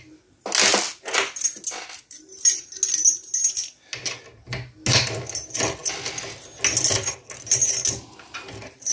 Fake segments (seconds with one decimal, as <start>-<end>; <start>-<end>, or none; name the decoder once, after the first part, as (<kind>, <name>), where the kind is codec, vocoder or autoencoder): none

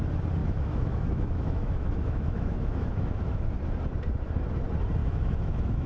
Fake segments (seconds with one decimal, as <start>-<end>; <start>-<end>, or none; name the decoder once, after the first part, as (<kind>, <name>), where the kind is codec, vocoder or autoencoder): 0.4-3.4 (autoencoder, DAC-VAE); 5.0-5.9

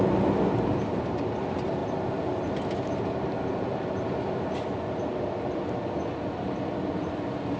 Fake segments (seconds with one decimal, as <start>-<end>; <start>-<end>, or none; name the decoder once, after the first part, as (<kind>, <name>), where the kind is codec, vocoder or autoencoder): none

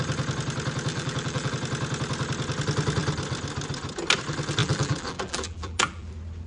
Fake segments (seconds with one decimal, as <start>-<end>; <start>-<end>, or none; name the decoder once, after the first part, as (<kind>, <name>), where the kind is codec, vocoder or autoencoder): 0.9-1.5 (vocoder, BigVGAN v2); 4.6-6.1

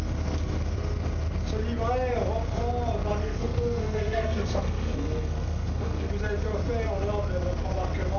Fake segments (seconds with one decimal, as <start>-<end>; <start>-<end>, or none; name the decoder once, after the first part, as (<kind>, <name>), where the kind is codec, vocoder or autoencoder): 3.2-6.1 (codec, SNAC)